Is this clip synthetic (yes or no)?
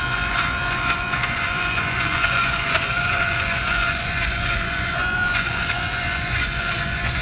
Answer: yes